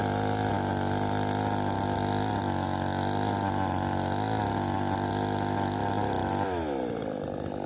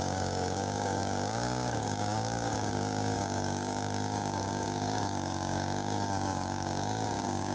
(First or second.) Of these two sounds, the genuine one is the first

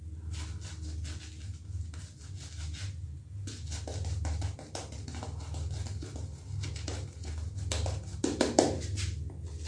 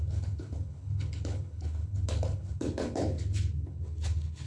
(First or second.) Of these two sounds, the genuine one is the first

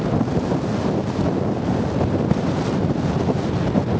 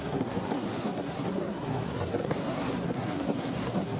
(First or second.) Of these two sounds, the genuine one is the first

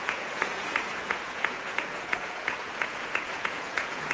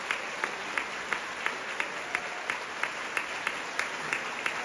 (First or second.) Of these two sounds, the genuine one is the second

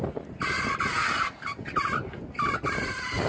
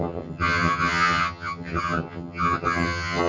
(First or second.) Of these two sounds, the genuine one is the first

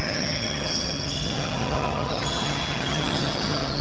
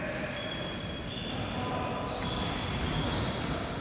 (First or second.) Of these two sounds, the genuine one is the second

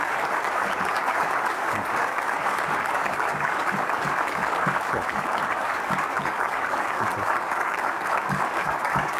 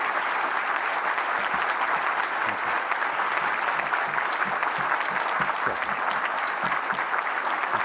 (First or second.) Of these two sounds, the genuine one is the second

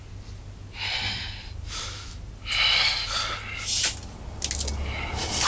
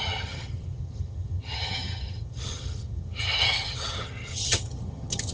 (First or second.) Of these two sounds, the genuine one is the first